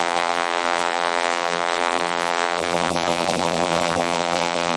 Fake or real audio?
fake